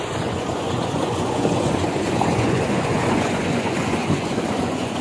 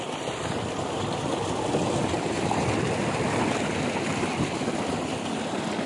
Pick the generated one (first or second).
first